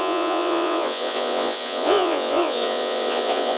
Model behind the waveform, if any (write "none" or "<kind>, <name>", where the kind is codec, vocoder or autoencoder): vocoder, Vocos